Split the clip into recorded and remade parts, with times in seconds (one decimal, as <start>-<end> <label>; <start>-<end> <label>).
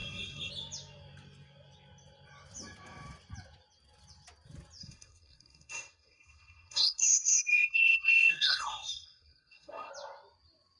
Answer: 0.0-0.5 remade; 0.5-4.8 recorded; 4.8-9.9 remade; 9.9-10.8 recorded